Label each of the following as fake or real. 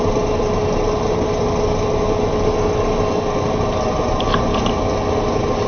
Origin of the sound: real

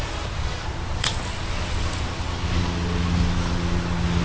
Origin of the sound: real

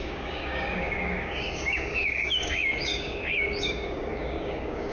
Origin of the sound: fake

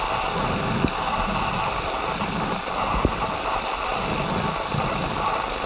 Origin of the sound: real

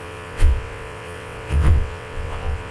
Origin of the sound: fake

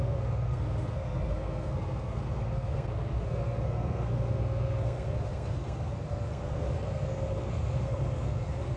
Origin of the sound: fake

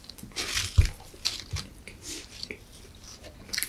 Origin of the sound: real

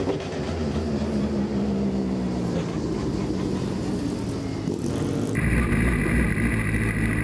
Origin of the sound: real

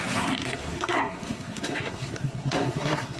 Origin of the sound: fake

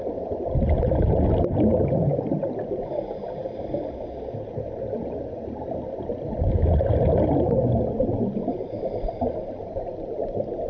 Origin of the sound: real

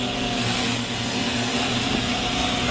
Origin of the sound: fake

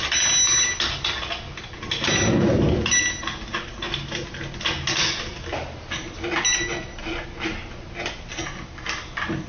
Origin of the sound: real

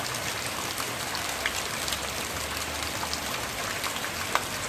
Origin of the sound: fake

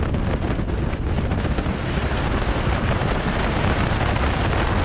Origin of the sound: real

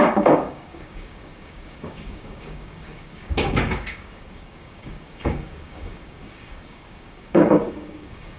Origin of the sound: fake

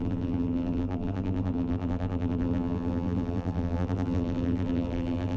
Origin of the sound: fake